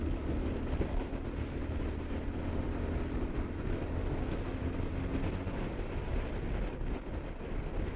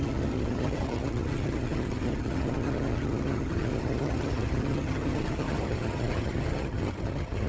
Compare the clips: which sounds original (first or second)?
first